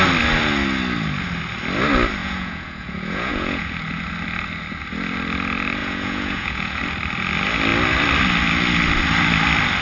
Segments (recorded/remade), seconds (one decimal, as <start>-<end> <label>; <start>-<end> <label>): 0.0-2.2 recorded; 2.2-3.7 remade; 3.7-5.8 recorded; 5.8-6.8 remade; 6.8-9.8 recorded